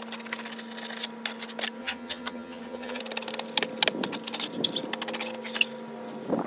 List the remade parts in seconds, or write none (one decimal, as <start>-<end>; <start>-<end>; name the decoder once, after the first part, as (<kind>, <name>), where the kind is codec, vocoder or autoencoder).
1.8-3.0 (vocoder, HiFi-GAN)